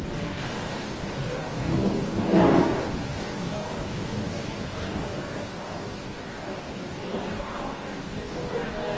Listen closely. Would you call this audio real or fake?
fake